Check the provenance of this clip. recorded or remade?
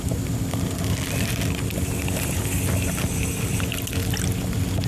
recorded